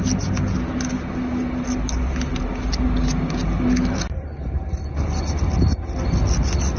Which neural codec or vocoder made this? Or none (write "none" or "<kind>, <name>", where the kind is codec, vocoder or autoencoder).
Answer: none